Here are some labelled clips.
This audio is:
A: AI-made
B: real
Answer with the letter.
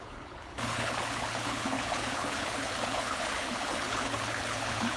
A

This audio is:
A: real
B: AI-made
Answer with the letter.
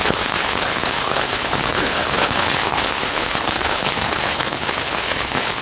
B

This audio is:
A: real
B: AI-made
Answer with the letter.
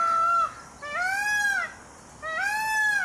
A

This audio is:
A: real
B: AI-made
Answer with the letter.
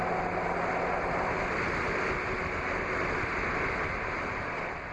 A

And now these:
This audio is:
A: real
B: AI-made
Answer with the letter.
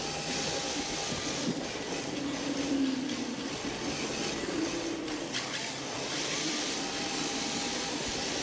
A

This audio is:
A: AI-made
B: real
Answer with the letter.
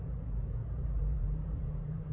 A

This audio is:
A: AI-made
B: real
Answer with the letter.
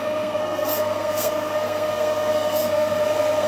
A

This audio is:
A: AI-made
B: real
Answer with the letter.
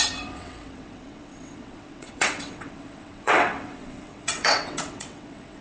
A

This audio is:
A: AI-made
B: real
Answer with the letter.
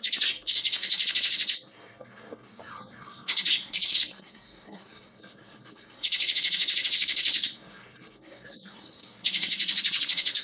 A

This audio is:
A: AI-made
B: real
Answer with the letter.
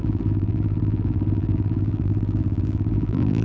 A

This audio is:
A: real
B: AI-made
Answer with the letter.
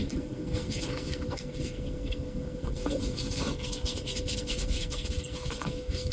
B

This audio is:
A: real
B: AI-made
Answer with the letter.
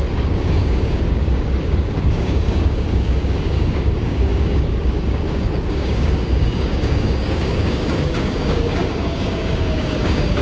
B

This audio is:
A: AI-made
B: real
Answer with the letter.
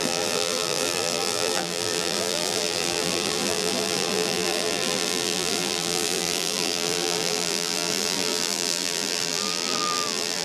A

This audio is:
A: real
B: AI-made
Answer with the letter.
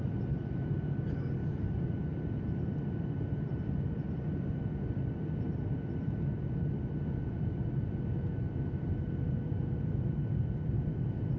A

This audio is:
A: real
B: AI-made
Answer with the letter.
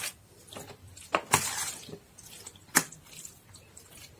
A